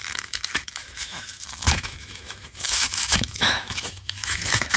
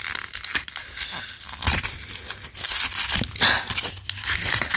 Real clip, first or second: second